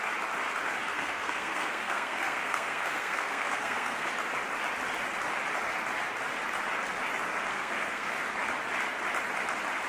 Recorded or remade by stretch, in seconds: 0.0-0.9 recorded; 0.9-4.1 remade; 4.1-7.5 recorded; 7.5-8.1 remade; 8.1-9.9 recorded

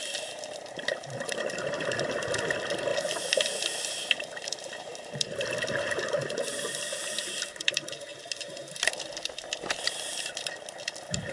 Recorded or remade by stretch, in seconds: 0.0-4.9 recorded; 4.9-5.6 remade; 5.6-11.3 recorded

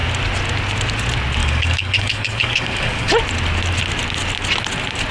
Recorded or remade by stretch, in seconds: 0.0-1.4 recorded; 1.4-3.1 remade; 3.1-5.1 recorded

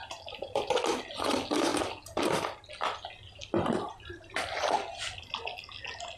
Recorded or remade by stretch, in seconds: 0.0-6.2 recorded

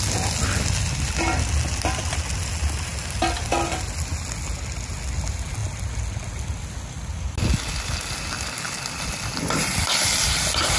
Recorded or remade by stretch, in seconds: 0.0-10.8 recorded